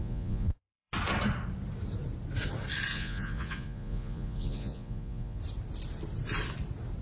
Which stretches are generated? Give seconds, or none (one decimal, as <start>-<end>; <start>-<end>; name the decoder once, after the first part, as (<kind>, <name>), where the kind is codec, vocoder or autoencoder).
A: 0.0-0.9 (vocoder, Vocos); 2.9-5.4